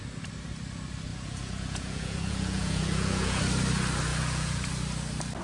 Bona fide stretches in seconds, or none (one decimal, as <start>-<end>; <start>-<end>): 0.0-1.1; 3.4-4.1; 4.7-5.4